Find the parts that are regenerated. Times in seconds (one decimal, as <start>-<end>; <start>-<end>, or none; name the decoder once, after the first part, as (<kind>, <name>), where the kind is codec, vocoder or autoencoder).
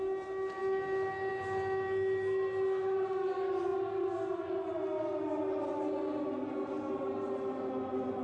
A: none